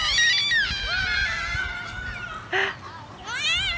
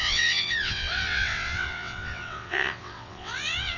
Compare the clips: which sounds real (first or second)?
first